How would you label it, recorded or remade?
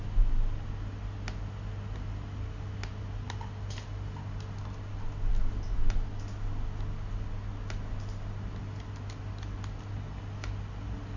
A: recorded